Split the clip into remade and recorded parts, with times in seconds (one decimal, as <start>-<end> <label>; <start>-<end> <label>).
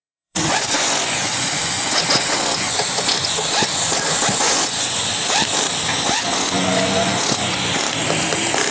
0.0-5.1 remade; 5.1-5.9 recorded; 5.9-7.8 remade; 7.8-8.7 recorded